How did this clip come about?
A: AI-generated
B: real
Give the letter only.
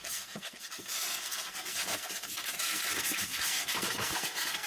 A